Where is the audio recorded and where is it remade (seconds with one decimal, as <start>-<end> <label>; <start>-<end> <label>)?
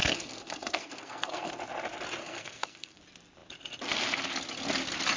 0.0-1.5 remade; 1.5-2.2 recorded; 2.2-3.0 remade; 3.0-5.2 recorded